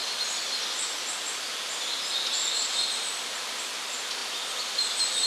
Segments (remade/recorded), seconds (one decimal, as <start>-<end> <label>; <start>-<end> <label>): 0.0-5.3 recorded